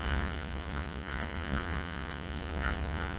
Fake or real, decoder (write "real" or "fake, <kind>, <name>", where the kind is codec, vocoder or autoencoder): fake, vocoder, Vocos